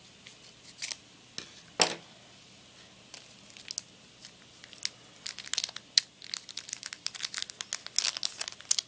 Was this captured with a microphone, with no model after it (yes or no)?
yes